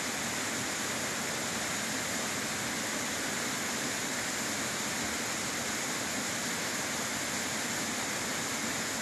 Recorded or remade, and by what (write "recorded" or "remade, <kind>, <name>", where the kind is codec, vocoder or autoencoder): recorded